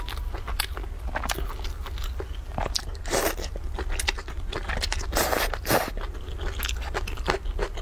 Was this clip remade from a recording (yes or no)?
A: no